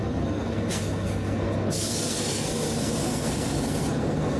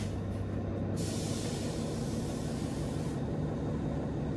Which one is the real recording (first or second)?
second